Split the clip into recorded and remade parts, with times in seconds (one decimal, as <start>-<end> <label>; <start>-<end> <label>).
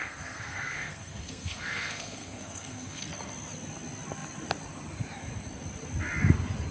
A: 0.0-3.0 remade; 3.0-6.7 recorded